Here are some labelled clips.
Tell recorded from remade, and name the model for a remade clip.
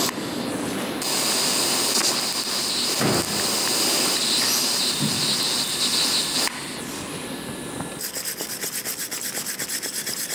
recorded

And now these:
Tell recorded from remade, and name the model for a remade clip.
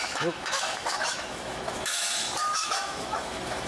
remade, autoencoder, DAC-VAE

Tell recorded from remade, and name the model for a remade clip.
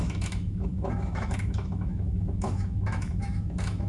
remade, autoencoder, DAC-VAE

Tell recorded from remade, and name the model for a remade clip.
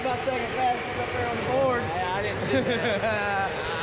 recorded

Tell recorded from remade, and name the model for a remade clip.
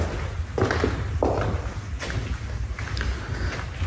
recorded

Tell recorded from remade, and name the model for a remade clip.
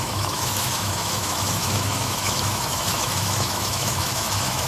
remade, autoencoder, DAC-VAE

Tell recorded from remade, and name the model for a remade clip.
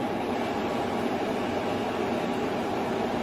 recorded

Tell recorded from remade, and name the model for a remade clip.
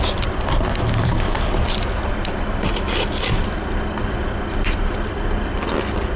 recorded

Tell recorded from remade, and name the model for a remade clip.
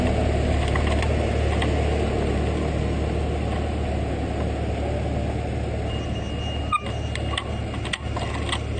recorded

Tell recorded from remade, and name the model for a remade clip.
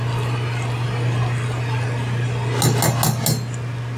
recorded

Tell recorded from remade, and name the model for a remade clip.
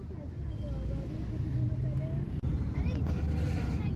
recorded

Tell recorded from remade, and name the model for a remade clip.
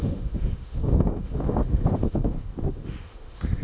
remade, autoencoder, DAC-VAE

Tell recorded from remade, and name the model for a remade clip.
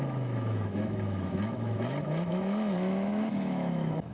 remade, autoencoder, DAC-VAE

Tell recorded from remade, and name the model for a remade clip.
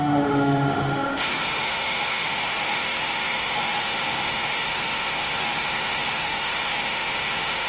remade, autoencoder, DAC-VAE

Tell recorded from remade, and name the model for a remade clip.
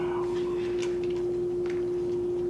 recorded